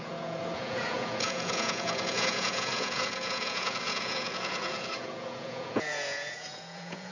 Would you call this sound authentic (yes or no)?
no